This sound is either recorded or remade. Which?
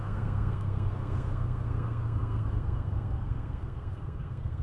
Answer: remade